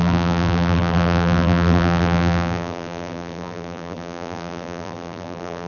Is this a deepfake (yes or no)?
yes